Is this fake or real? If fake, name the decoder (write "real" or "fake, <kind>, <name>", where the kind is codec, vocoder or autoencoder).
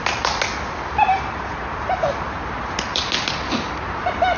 real